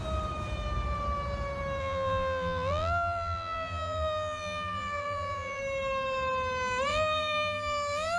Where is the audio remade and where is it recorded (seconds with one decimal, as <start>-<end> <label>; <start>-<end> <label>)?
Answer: 0.0-1.8 recorded; 1.8-5.6 remade; 5.6-6.9 recorded; 6.9-8.2 remade